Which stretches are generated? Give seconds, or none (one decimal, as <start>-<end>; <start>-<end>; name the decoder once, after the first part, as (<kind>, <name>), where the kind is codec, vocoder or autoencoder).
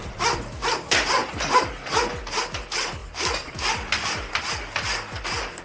3.0-4.5 (vocoder, BigVGAN v2)